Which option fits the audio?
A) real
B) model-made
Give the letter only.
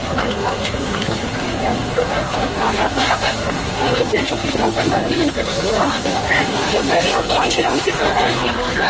B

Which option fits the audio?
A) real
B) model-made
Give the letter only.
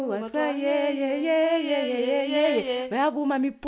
A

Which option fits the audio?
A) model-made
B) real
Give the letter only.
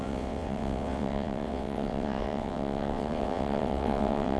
A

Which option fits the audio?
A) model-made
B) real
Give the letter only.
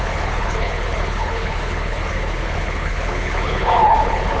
A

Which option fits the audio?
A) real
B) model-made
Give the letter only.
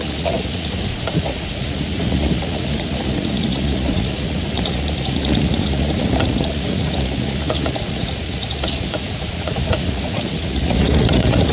B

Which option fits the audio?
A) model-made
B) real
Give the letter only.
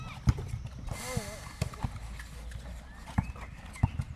B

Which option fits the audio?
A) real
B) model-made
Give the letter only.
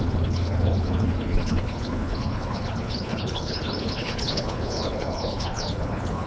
B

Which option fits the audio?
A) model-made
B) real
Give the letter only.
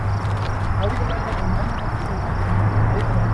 B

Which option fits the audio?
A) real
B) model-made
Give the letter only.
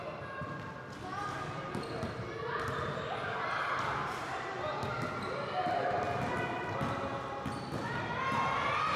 A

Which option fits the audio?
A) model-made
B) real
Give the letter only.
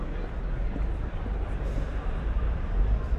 B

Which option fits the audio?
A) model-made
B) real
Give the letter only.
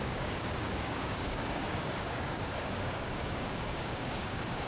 A